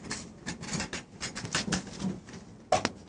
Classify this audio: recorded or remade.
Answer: recorded